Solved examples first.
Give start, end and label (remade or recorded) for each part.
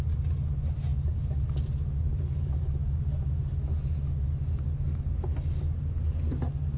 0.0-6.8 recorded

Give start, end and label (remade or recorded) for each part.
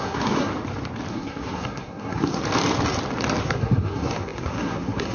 0.0-0.5 remade; 0.5-1.1 recorded; 1.1-2.4 remade; 2.4-3.4 recorded; 3.4-5.1 remade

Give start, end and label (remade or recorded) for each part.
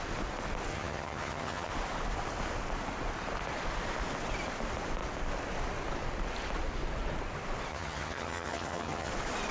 0.0-0.7 recorded; 0.7-1.7 remade; 1.7-7.7 recorded; 7.7-9.1 remade; 9.1-9.5 recorded